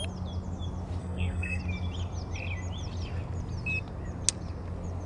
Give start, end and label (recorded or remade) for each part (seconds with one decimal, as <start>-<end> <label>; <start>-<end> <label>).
0.0-1.0 recorded; 1.0-1.6 remade; 1.6-5.1 recorded